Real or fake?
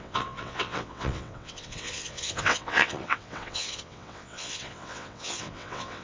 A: fake